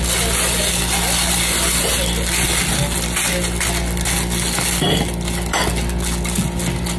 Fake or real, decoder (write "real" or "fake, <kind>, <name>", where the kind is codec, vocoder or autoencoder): real